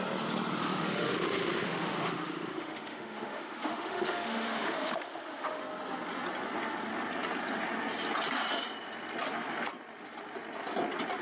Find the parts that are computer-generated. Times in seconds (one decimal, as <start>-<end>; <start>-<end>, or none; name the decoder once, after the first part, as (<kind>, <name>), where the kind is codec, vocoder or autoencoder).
0.6-5.6 (autoencoder, DAC-VAE)